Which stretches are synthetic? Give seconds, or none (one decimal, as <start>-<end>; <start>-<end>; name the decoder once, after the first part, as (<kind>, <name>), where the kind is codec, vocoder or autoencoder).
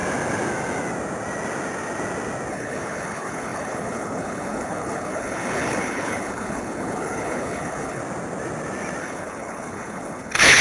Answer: 2.5-8.0 (codec, HILCodec); 9.0-10.6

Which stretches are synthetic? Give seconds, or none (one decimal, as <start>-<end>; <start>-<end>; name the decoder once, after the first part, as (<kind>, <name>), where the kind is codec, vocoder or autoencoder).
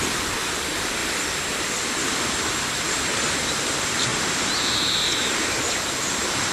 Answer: 0.0-1.0 (vocoder, BigVGAN v2); 1.5-6.5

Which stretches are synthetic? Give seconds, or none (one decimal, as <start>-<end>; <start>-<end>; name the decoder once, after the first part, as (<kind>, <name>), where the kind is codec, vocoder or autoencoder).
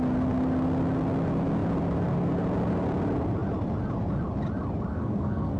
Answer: 4.9-5.6 (codec, SNAC)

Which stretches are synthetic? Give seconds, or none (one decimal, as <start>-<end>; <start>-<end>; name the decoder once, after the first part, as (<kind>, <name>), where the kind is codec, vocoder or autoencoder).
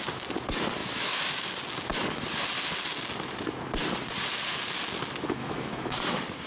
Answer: 0.8-1.3 (autoencoder, DAC-VAE); 5.4-6.0